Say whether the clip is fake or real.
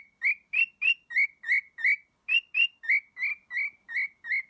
real